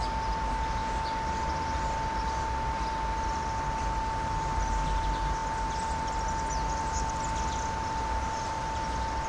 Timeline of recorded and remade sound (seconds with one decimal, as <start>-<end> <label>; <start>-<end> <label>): 0.0-9.3 recorded